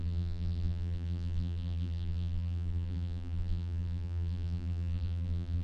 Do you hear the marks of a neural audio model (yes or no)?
yes